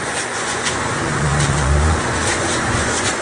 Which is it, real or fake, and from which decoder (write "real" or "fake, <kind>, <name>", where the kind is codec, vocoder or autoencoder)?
fake, vocoder, Vocos